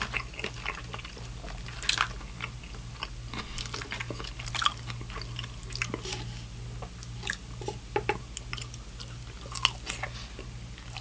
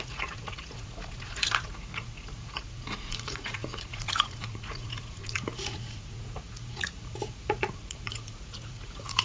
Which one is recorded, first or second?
first